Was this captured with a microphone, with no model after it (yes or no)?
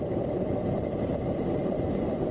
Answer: no